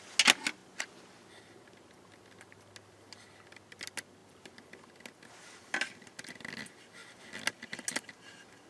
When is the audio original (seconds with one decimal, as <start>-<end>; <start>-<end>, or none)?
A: 0.0-8.7